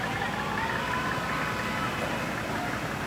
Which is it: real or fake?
real